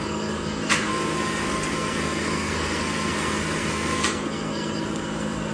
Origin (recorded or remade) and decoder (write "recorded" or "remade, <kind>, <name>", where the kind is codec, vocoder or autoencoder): remade, codec, SNAC